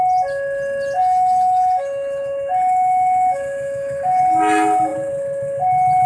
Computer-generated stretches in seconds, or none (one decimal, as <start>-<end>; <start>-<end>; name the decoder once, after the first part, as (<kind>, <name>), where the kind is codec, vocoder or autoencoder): 1.0-4.2 (autoencoder, DAC-VAE)